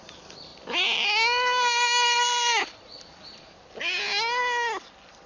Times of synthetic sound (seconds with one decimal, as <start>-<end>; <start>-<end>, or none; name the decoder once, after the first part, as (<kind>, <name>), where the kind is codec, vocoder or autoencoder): none